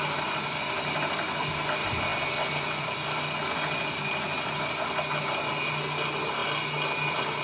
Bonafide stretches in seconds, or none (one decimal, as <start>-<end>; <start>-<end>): 0.0-7.4